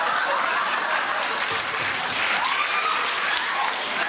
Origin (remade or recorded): recorded